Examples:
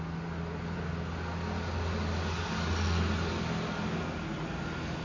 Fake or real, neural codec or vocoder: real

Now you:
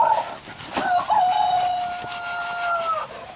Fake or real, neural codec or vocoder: real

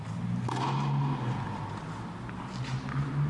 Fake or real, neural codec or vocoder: real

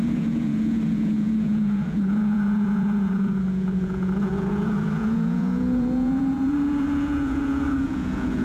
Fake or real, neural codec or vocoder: fake, vocoder, Vocos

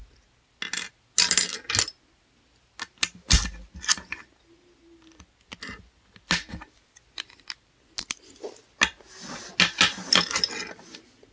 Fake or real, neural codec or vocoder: real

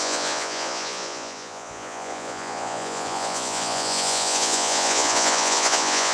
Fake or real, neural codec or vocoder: fake, vocoder, Vocos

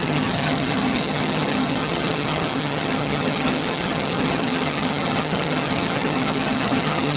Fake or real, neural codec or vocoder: fake, vocoder, HiFi-GAN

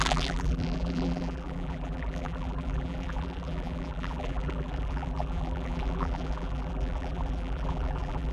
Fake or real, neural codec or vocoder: fake, vocoder, BigVGAN v2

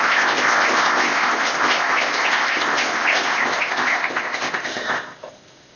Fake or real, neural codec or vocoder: fake, codec, ZipCodec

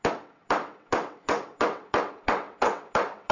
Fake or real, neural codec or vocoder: fake, vocoder, WaveNeXt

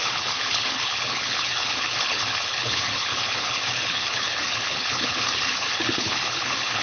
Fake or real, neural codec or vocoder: fake, codec, HILCodec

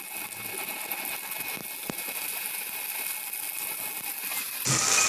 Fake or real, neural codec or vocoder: real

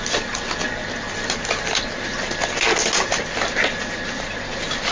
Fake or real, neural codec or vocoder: real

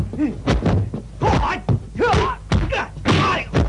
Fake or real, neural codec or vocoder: real